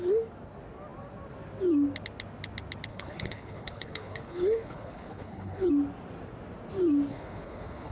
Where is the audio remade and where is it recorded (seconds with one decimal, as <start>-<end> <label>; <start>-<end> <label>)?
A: 0.0-2.9 recorded; 2.9-5.7 remade; 5.7-7.1 recorded; 7.1-7.9 remade